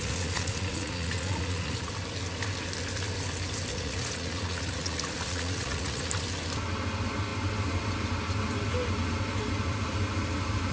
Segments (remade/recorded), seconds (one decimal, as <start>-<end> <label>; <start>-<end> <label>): 0.0-1.9 remade; 1.9-3.7 recorded; 3.7-6.1 remade; 6.1-10.7 recorded